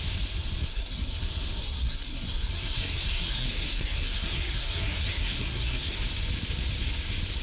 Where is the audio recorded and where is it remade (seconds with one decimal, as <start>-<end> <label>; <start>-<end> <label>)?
0.0-0.7 recorded; 0.7-1.2 remade; 1.2-1.6 recorded; 1.6-6.0 remade; 6.0-7.4 recorded